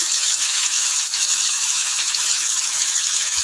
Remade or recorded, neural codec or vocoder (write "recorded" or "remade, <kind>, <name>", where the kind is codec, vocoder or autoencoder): remade, autoencoder, DAC-VAE